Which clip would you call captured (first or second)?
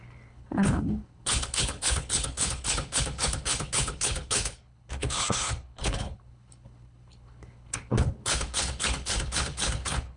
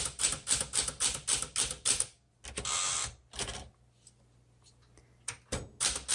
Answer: second